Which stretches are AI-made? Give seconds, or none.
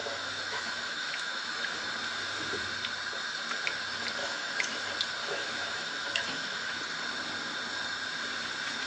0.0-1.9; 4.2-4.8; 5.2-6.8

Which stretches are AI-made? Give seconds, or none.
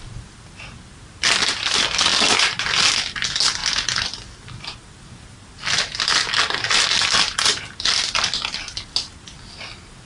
none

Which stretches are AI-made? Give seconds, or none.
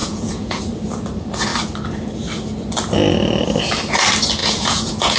0.0-0.6; 4.4-5.2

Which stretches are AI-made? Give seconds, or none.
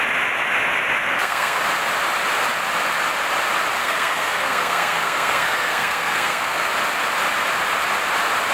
1.1-1.6; 3.8-6.7